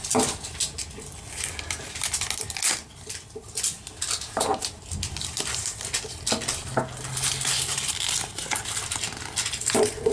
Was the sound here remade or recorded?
recorded